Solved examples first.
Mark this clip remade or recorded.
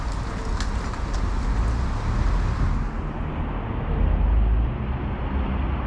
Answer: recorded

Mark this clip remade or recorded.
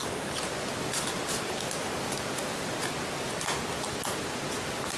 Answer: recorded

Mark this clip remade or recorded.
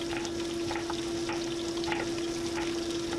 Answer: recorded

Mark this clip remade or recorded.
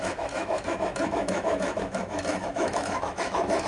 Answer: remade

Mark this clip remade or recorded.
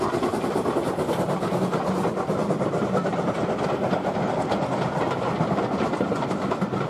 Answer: recorded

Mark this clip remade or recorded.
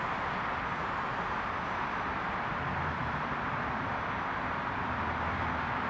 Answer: recorded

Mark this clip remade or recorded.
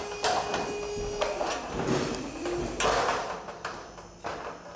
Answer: recorded